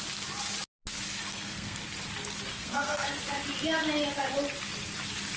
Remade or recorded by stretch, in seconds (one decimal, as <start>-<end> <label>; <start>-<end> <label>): 0.0-1.2 recorded; 1.2-1.8 remade; 1.8-2.5 recorded; 2.5-3.2 remade; 3.2-5.4 recorded